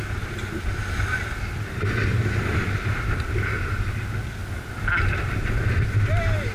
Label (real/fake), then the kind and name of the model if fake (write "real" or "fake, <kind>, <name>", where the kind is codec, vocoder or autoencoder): real